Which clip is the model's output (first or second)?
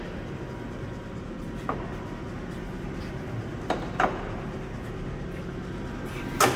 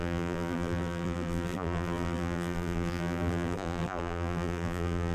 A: second